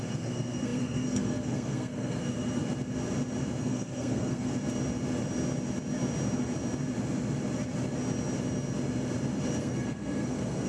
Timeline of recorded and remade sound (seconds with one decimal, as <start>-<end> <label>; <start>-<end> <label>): 0.0-2.6 remade; 2.6-3.6 recorded; 3.6-4.5 remade; 4.5-9.6 recorded; 9.6-10.7 remade